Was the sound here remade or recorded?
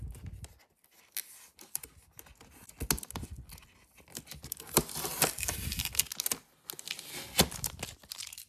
recorded